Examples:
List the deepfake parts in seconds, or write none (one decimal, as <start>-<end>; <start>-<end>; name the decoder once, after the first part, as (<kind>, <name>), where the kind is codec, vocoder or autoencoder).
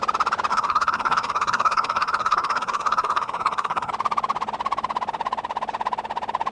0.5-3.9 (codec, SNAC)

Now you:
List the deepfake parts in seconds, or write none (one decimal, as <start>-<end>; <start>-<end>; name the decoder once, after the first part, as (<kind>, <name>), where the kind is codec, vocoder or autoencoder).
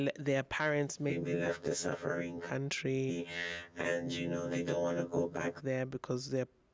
1.1-2.5 (vocoder, HiFi-GAN); 3.1-5.6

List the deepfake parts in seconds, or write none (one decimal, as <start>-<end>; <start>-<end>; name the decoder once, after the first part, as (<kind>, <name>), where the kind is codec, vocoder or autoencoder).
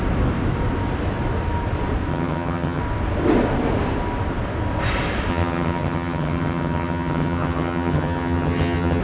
2.1-2.8 (vocoder, HiFi-GAN); 5.3-9.0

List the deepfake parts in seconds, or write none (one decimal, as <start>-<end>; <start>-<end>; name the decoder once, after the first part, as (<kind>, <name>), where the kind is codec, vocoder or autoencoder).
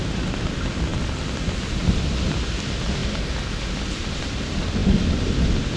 none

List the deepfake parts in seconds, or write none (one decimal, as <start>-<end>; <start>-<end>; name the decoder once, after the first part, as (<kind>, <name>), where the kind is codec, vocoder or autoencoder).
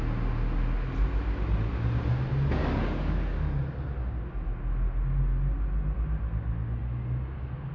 2.6-3.6 (codec, DAC)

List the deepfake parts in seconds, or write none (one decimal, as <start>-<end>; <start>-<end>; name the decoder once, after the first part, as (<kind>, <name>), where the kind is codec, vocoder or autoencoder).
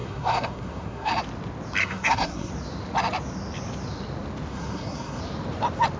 0.0-1.1 (codec, SNAC); 1.8-2.5; 4.5-5.2